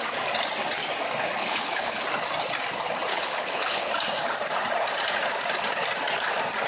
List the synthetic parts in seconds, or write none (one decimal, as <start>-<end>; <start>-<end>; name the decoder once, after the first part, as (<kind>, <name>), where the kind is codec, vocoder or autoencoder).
1.4-2.0 (codec, HILCodec); 3.1-3.9